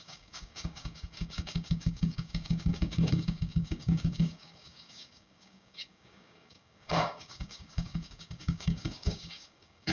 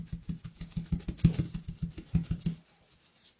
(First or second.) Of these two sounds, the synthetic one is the first